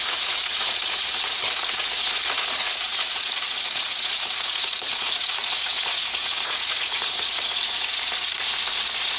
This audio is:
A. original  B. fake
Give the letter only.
B